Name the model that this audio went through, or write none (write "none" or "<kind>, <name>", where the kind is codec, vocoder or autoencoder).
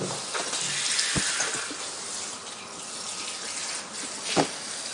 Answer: none